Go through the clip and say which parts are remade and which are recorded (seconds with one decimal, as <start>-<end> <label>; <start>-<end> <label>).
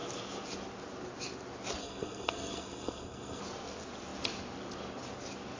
0.0-1.8 recorded; 1.8-3.4 remade; 3.4-5.6 recorded